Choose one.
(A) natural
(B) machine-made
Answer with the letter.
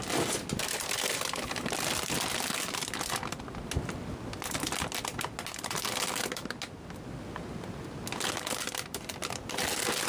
A